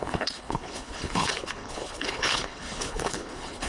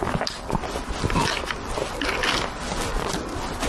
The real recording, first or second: second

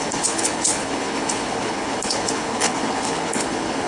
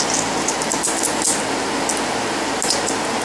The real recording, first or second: second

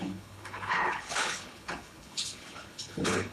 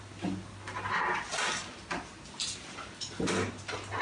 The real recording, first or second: second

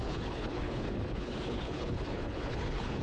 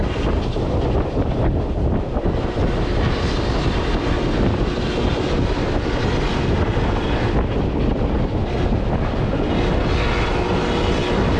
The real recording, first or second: second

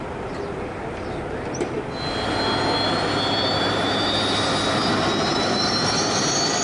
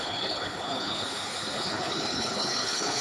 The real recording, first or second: first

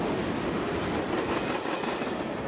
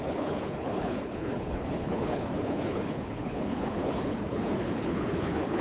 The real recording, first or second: first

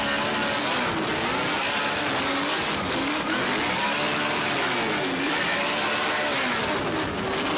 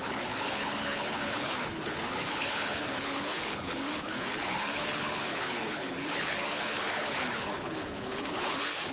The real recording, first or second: first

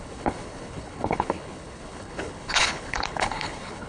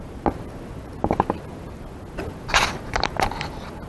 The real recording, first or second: second